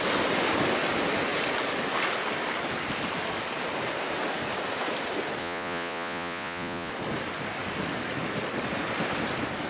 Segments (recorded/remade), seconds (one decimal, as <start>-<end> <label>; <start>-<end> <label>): 0.0-5.4 recorded; 5.4-6.9 remade; 6.9-9.7 recorded